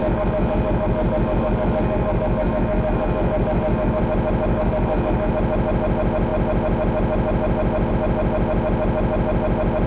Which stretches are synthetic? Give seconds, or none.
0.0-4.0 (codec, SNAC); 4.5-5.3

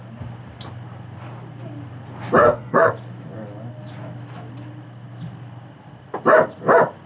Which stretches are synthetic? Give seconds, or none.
2.4-2.9 (codec, SNAC)

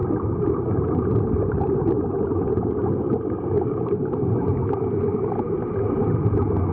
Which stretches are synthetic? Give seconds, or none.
none